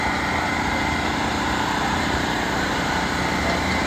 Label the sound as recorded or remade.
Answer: remade